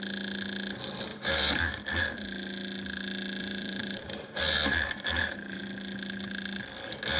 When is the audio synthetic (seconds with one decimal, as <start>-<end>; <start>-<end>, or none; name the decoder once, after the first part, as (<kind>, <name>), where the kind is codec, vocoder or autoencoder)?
1.1-1.8 (vocoder, BigVGAN v2); 3.4-5.6